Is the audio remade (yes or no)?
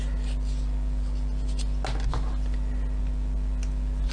no